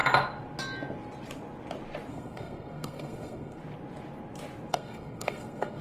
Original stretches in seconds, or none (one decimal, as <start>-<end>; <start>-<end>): 0.0-2.1; 3.6-4.7